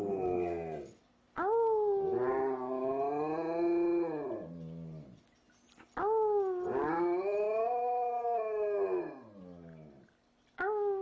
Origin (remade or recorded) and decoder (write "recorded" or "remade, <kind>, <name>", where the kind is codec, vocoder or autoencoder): recorded